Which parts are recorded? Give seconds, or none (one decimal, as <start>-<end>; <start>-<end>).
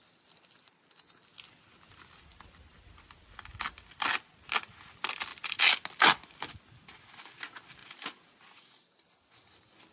0.0-9.9